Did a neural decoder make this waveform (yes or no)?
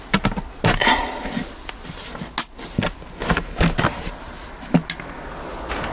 no